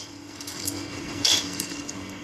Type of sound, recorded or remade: remade